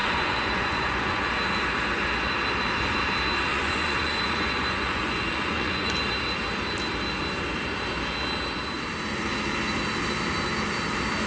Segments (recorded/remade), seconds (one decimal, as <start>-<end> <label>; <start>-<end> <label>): 0.0-1.3 remade; 1.3-3.5 recorded; 3.5-5.9 remade; 5.9-11.3 recorded